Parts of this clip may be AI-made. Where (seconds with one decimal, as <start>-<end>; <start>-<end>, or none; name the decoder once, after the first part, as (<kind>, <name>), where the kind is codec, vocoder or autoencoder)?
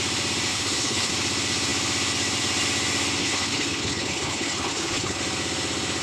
0.5-1.1 (codec, HILCodec); 3.2-5.2